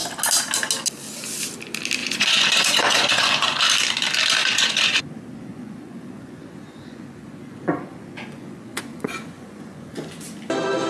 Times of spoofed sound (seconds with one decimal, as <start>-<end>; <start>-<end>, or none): 2.0-3.6; 4.4-5.1; 5.5-10.2